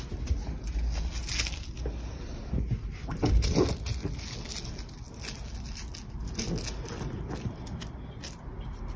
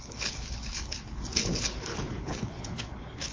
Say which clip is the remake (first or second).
second